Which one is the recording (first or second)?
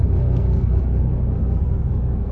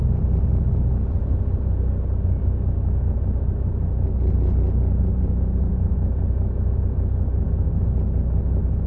second